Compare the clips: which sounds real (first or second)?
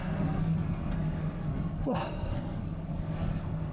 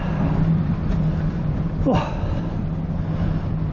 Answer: second